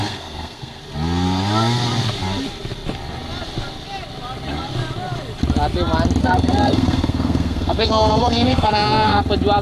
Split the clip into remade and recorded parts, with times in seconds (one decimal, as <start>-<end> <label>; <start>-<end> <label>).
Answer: 0.0-0.8 remade; 0.8-6.2 recorded; 6.2-9.2 remade; 9.2-9.6 recorded

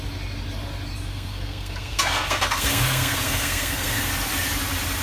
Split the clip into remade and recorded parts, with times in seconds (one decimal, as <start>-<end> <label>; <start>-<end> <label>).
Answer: 0.0-1.1 recorded; 1.1-4.1 remade; 4.1-5.0 recorded

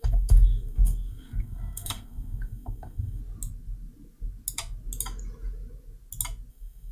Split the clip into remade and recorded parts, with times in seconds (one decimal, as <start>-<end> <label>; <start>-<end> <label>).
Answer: 0.0-3.2 remade; 3.2-6.5 recorded; 6.5-6.9 remade

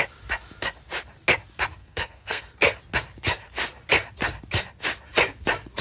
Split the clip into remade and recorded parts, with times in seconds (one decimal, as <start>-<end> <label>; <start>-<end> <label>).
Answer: 0.0-1.8 recorded; 1.8-2.4 remade; 2.4-5.8 recorded

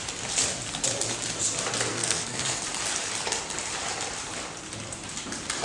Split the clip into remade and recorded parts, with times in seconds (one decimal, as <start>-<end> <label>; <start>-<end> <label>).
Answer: 0.0-1.9 recorded; 1.9-2.6 remade; 2.6-5.6 recorded

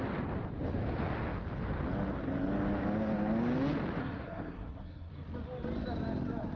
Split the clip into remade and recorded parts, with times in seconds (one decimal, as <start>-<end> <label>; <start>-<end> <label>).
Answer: 0.0-4.0 recorded; 4.0-5.1 remade; 5.1-6.6 recorded

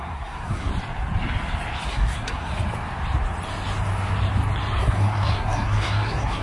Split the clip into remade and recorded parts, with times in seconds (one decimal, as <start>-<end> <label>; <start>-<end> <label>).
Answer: 0.0-0.7 remade; 0.7-1.9 recorded; 1.9-2.5 remade; 2.5-4.8 recorded; 4.8-6.4 remade